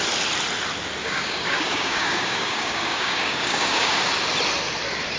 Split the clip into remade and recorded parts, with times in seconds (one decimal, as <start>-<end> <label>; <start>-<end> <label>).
0.0-1.0 recorded; 1.0-4.1 remade; 4.1-5.2 recorded